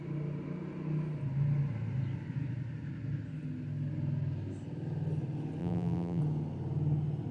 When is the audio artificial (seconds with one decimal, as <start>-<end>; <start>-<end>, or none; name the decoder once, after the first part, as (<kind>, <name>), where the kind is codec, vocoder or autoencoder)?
5.6-6.2 (vocoder, BigVGAN v2)